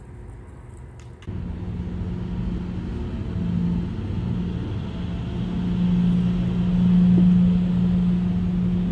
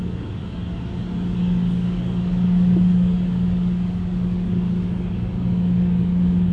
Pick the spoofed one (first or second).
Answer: second